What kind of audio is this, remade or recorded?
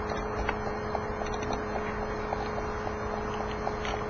recorded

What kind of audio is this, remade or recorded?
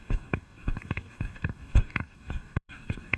remade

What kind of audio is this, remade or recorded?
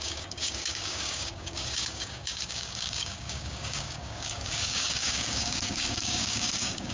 remade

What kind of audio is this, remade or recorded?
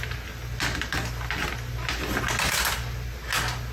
recorded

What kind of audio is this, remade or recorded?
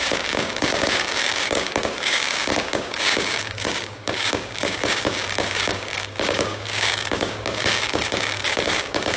remade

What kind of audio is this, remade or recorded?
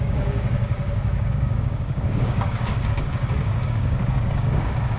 remade